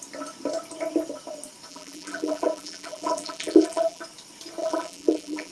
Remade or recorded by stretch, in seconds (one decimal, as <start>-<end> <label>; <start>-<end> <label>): 0.0-1.7 recorded; 1.7-4.0 remade; 4.0-4.6 recorded; 4.6-5.5 remade